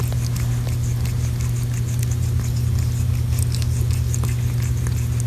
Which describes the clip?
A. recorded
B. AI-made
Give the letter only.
A